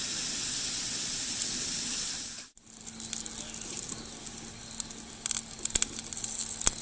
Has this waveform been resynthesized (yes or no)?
no